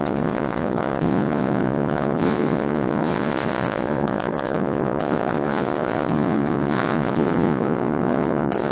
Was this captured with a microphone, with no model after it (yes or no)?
no